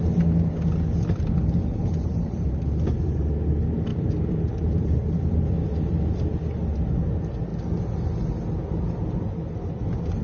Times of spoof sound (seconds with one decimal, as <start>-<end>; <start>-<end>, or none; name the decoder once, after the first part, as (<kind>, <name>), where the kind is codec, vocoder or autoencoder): 1.7-2.5 (vocoder, BigVGAN v2); 3.9-5.4